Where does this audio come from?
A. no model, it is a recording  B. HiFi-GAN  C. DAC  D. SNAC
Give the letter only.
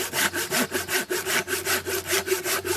A